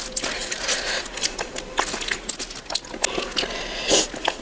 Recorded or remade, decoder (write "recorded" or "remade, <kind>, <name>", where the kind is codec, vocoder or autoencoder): recorded